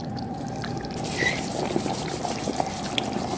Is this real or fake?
real